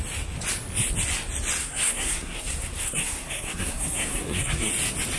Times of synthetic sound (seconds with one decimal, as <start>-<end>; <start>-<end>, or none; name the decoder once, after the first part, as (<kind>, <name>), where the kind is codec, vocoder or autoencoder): 1.6-4.7 (codec, SNAC)